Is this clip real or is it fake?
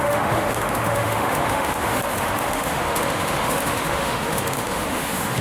fake